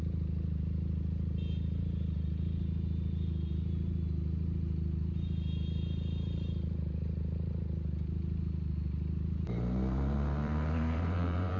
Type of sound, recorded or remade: remade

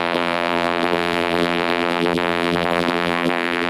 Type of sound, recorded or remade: remade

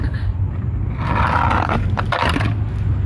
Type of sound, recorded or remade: recorded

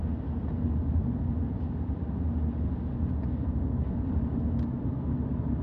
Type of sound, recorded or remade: recorded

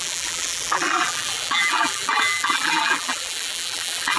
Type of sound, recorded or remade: remade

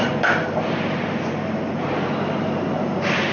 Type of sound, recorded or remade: remade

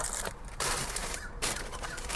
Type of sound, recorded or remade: remade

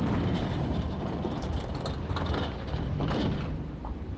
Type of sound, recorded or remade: remade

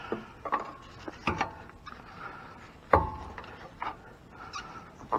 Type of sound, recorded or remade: recorded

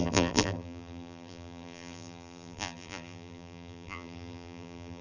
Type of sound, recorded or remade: remade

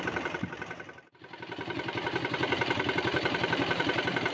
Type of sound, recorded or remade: remade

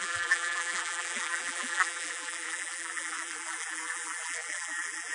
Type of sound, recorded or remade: remade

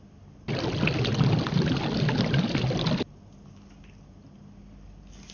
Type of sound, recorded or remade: recorded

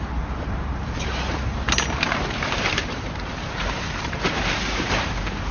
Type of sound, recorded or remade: remade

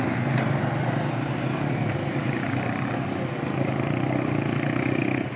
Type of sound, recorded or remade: recorded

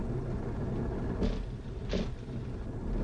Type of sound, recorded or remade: recorded